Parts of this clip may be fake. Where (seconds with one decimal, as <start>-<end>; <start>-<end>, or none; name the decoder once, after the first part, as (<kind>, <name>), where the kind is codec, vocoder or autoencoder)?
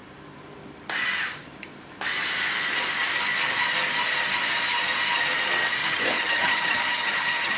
5.8-7.6 (vocoder, HiFi-GAN)